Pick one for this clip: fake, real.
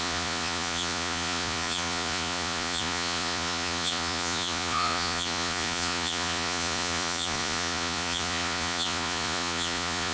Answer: fake